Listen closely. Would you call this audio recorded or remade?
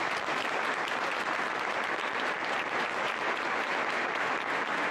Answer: remade